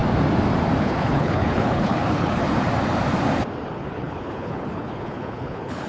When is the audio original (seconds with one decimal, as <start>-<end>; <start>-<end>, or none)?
0.0-0.8; 2.4-3.7